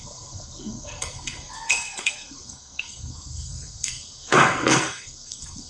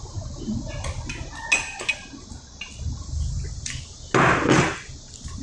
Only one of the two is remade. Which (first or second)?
first